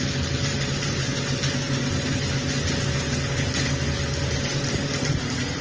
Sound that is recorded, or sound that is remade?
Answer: recorded